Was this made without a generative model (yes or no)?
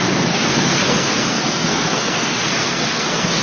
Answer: no